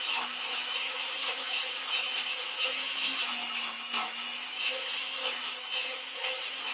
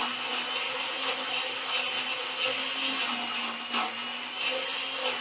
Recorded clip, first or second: second